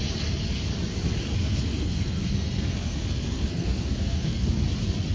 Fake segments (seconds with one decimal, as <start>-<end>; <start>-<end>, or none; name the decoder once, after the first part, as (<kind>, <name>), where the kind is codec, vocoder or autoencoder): 1.4-4.5 (codec, SNAC)